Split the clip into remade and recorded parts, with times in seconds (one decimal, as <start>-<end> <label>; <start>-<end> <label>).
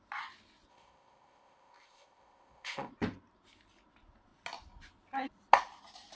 0.0-0.7 recorded; 0.7-2.9 remade; 2.9-6.2 recorded